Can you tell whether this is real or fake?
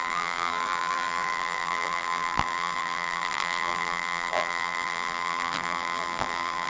fake